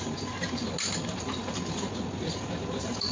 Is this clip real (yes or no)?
yes